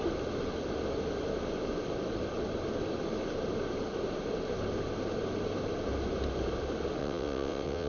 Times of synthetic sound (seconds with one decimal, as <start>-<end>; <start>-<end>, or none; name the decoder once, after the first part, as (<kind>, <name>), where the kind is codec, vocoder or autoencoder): 7.0-7.9 (vocoder, WaveNeXt)